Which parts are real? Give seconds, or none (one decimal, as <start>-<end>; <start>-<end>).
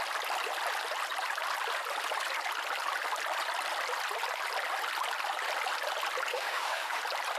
0.0-6.3; 7.0-7.4